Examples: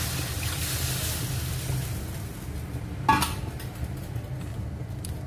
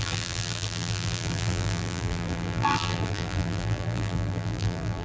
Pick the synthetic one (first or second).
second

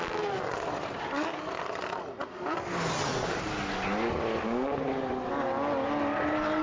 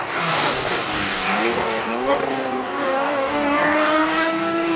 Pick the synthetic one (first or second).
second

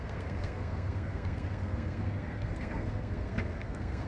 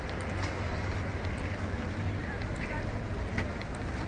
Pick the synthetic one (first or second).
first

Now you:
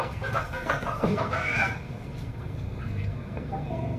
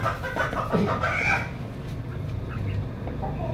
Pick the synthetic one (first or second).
first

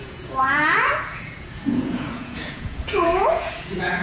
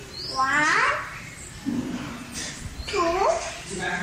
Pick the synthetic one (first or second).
first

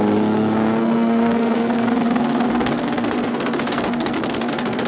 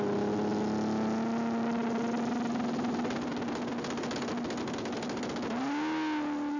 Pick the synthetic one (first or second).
first